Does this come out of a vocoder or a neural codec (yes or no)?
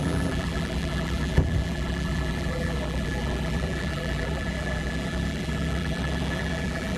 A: yes